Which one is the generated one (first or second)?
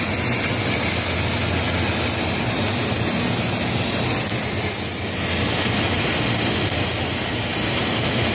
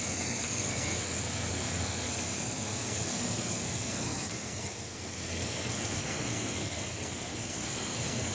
second